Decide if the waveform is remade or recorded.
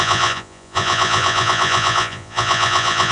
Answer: remade